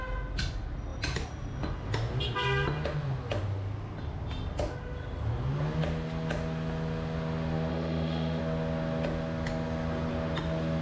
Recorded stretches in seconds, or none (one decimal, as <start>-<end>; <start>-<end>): 0.0-7.7; 8.4-10.8